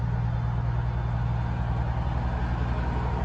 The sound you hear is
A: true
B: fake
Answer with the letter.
A